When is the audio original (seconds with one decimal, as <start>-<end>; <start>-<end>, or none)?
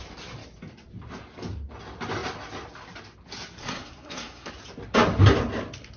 0.0-3.6; 4.5-6.0